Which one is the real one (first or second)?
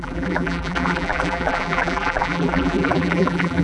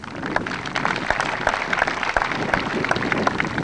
second